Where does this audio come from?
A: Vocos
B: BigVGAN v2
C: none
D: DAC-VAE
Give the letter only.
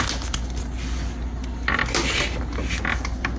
C